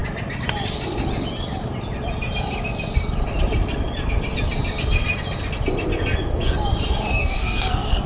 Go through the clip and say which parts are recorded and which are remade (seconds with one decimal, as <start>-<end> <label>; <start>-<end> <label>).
0.0-7.1 recorded; 7.1-8.1 remade